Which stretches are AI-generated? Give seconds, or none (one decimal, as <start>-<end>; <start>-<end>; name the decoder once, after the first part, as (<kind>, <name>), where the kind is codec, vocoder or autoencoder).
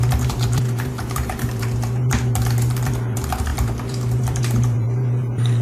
0.0-5.6 (vocoder, BigVGAN v2)